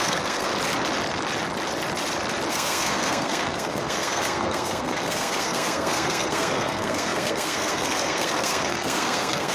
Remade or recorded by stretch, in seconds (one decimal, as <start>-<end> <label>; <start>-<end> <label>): 0.0-0.5 remade; 0.5-2.5 recorded; 2.5-9.5 remade